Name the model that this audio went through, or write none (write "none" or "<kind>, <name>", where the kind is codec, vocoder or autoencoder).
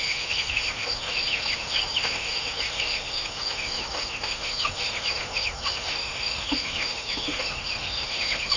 autoencoder, DAC-VAE